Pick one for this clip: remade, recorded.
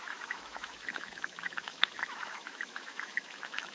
remade